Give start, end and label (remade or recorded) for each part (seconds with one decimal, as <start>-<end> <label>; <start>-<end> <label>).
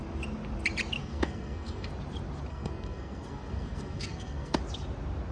0.0-1.0 recorded; 1.0-1.9 remade; 1.9-2.5 recorded; 2.5-4.6 remade; 4.6-5.3 recorded